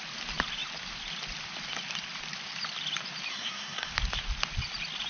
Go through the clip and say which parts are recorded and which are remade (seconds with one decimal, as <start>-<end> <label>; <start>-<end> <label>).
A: 0.0-3.3 recorded; 3.3-3.9 remade; 3.9-5.1 recorded